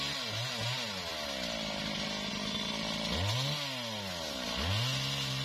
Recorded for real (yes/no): yes